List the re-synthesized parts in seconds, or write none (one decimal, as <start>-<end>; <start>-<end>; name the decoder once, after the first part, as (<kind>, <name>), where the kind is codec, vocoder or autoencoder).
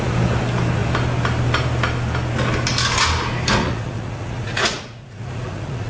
3.6-5.9 (vocoder, Vocos)